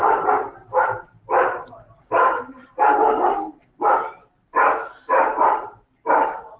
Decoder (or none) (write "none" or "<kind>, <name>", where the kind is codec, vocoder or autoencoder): none